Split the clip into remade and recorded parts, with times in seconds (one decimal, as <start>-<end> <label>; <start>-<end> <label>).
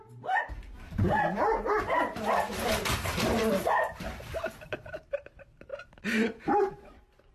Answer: 0.0-7.3 remade